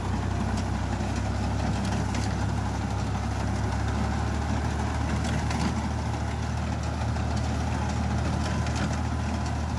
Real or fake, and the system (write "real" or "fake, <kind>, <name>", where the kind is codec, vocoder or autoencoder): real